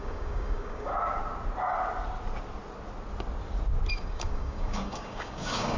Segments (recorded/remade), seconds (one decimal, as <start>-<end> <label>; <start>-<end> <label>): 0.0-0.9 remade; 0.9-3.9 recorded; 3.9-5.8 remade